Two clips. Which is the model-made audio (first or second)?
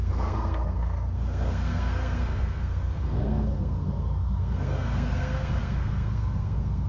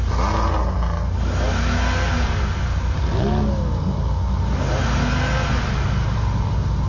first